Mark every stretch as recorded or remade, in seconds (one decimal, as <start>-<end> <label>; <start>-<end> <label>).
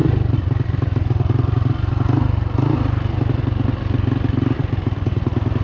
0.0-5.6 recorded